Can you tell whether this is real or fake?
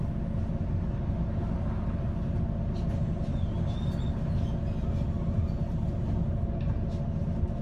real